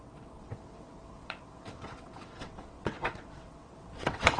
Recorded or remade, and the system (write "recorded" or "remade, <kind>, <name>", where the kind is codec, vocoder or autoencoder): remade, vocoder, WaveNeXt